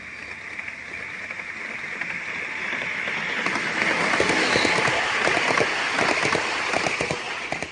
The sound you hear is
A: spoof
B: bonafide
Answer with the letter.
B